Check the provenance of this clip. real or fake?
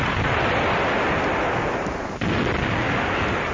real